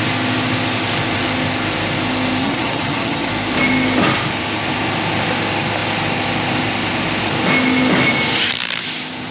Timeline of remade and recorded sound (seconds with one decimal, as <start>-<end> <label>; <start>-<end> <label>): 0.0-2.4 recorded; 2.4-3.3 remade; 3.3-9.3 recorded